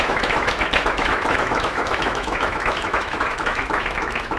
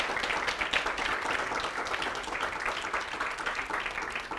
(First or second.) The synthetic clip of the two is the first